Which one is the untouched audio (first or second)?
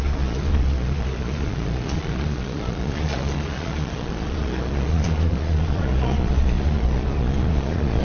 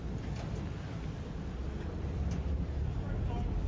second